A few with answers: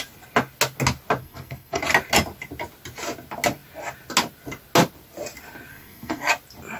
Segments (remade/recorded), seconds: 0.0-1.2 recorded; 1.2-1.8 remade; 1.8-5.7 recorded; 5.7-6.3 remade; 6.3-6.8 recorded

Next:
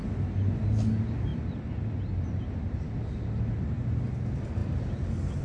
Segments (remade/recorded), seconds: 0.0-5.4 recorded

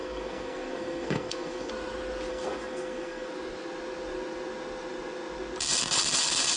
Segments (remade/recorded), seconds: 0.0-1.7 remade; 1.7-2.3 recorded; 2.3-3.3 remade; 3.3-6.6 recorded

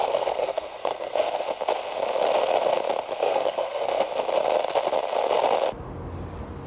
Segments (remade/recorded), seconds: 0.0-1.5 remade; 1.5-3.2 recorded; 3.2-4.0 remade; 4.0-6.7 recorded

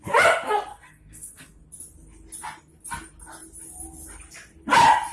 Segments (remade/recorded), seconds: 0.0-0.7 recorded; 0.7-1.6 remade; 1.6-5.1 recorded

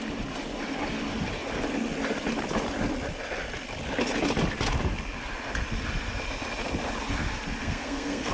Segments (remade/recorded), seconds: 0.0-7.6 recorded; 7.6-8.3 remade

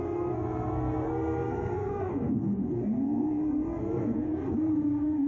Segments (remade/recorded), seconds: 0.0-5.3 remade

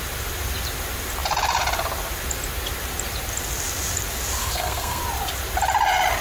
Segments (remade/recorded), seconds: 0.0-4.4 recorded; 4.4-5.0 remade; 5.0-6.2 recorded